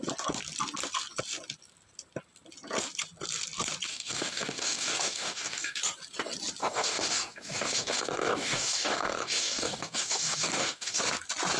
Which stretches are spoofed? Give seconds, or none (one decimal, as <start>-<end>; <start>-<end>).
3.9-5.8; 6.6-11.0